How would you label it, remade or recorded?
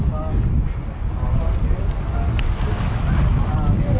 recorded